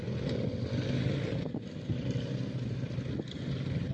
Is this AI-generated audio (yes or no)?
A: no